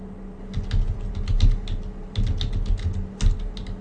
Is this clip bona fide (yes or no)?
yes